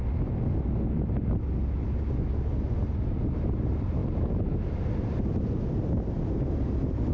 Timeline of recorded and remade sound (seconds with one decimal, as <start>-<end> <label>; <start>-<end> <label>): 0.0-4.0 recorded; 4.0-5.4 remade; 5.4-7.1 recorded